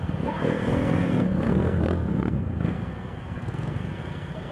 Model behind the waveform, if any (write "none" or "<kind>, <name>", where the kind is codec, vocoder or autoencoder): codec, SNAC